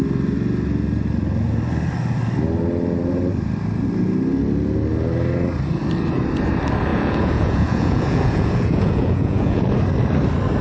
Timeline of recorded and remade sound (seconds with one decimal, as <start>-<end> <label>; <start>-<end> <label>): 0.0-6.9 recorded; 6.9-9.7 remade; 9.7-10.6 recorded